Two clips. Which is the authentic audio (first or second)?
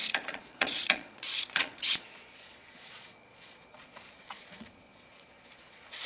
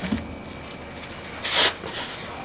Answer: second